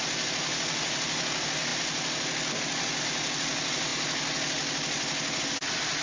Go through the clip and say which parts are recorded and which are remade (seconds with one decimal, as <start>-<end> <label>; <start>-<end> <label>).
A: 0.0-6.0 recorded